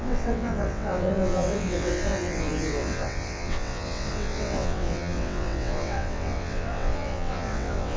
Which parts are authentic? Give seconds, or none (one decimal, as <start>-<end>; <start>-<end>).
none